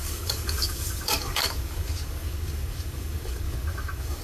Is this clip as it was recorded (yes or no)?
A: no